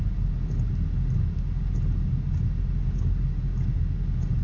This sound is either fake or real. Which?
real